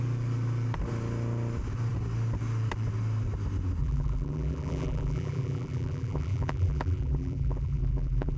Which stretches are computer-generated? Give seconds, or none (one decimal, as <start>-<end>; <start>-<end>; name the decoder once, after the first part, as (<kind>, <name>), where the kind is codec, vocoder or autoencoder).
3.8-8.4 (vocoder, BigVGAN v2)